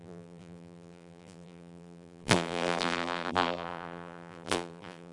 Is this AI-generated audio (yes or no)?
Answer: yes